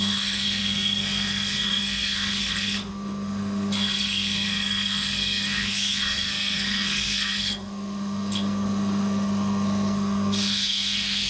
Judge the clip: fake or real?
fake